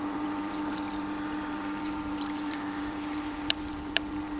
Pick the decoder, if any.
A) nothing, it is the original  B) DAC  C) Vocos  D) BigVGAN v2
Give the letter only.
D